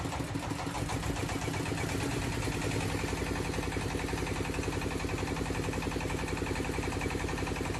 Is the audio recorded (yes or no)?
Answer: yes